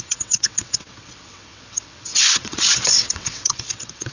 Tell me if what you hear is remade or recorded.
remade